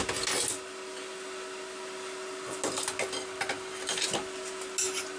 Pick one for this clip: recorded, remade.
recorded